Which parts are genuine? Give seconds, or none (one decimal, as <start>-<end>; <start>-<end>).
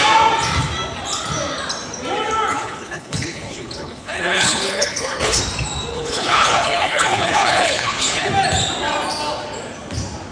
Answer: 0.0-2.5; 5.4-5.9; 8.3-10.3